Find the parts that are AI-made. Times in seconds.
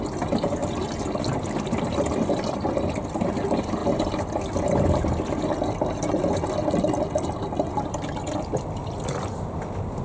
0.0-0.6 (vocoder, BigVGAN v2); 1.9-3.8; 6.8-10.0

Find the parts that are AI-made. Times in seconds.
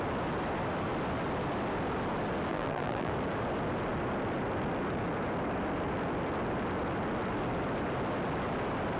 2.5-3.1 (vocoder, BigVGAN v2)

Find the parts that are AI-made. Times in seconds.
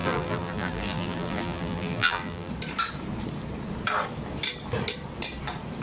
0.0-2.5 (vocoder, BigVGAN v2)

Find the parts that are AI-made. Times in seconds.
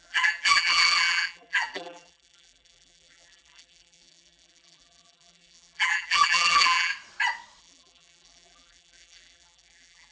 0.0-6.9 (vocoder, BigVGAN v2); 7.6-10.1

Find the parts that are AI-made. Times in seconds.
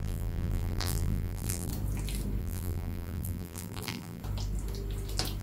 0.0-1.7 (vocoder, BigVGAN v2); 2.4-4.2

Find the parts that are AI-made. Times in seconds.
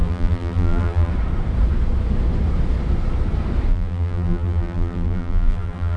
0.0-1.1 (vocoder, BigVGAN v2); 3.7-6.0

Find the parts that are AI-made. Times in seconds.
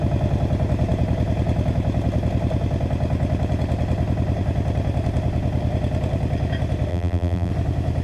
6.9-7.5 (vocoder, BigVGAN v2)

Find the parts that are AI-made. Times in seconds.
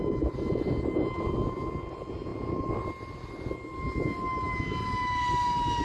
none